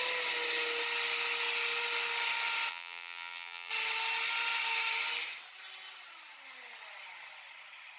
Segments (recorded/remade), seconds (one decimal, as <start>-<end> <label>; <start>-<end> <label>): 0.0-2.7 recorded; 2.7-3.7 remade; 3.7-8.0 recorded